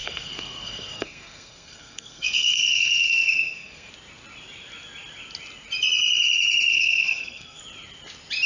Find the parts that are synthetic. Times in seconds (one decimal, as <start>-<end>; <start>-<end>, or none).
0.0-3.9; 6.7-7.6